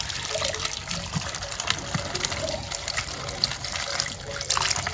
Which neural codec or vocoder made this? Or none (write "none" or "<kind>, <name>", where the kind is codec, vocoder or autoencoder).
none